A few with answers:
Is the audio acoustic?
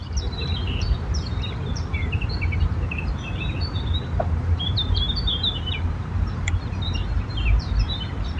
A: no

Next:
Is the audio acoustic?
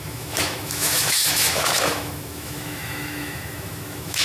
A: no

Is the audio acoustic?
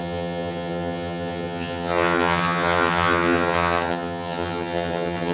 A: no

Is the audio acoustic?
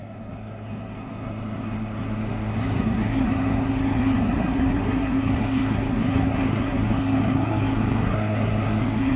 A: no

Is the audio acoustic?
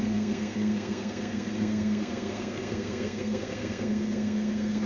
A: no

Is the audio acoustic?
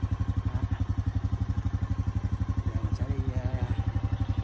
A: yes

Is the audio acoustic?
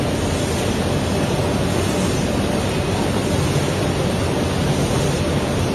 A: yes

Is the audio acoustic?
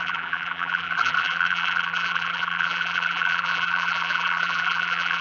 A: no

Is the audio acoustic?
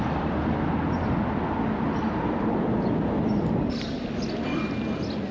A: yes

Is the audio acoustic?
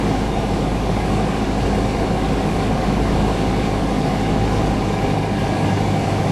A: no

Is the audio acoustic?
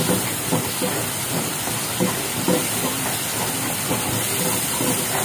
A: yes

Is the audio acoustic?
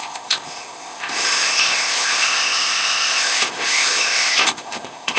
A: no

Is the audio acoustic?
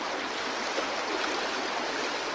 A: yes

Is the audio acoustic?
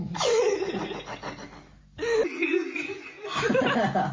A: yes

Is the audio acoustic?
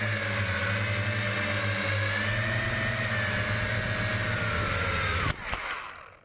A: yes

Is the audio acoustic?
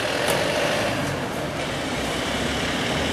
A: yes